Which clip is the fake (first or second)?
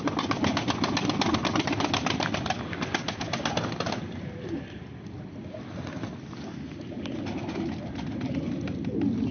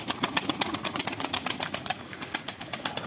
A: second